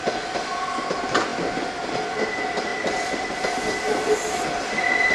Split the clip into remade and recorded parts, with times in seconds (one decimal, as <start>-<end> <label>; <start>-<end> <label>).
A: 0.0-0.9 recorded; 0.9-1.3 remade; 1.3-1.9 recorded; 1.9-5.1 remade